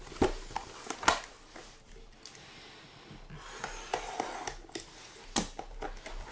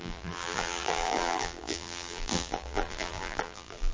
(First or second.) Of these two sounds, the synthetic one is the second